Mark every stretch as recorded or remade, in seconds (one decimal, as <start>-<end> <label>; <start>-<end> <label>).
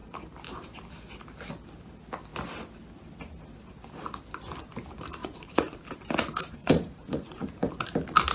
0.0-5.2 recorded; 5.2-5.8 remade; 5.8-6.6 recorded; 6.6-7.7 remade; 7.7-8.3 recorded